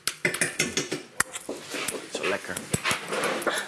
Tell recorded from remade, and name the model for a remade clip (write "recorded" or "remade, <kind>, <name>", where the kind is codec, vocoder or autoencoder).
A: recorded